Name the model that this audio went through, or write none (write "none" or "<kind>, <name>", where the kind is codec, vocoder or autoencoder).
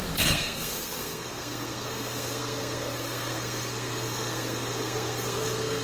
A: codec, SNAC